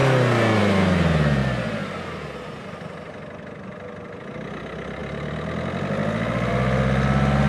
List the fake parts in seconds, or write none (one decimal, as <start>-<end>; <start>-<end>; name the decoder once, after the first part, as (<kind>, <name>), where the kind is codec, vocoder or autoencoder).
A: none